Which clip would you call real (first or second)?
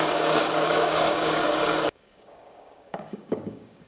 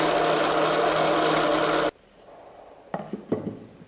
second